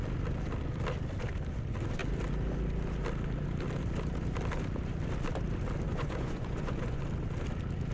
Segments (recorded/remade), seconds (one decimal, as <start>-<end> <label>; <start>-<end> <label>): 0.0-5.9 recorded; 5.9-7.0 remade; 7.0-7.9 recorded